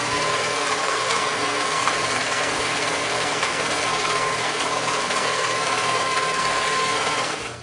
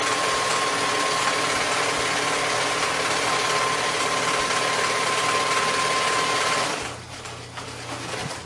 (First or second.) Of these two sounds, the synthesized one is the first